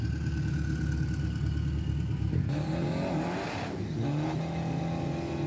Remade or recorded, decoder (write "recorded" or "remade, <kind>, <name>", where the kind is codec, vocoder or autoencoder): recorded